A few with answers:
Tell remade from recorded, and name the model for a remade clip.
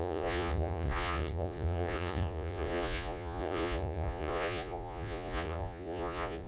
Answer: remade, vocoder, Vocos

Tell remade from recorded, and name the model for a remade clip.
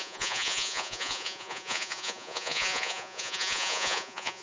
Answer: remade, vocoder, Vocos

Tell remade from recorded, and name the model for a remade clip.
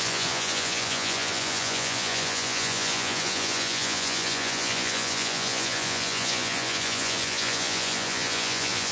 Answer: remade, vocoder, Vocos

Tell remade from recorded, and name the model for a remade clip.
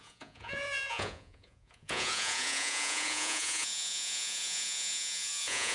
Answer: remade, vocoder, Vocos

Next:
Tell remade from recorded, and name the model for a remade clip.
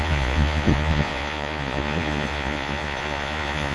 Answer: remade, vocoder, Vocos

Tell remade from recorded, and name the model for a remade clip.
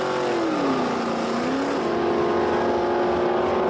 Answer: recorded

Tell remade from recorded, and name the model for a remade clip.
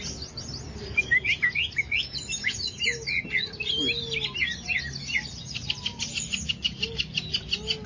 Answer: recorded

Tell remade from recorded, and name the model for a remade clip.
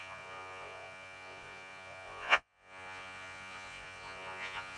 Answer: remade, vocoder, Vocos